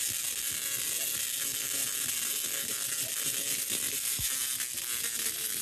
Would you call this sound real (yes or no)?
yes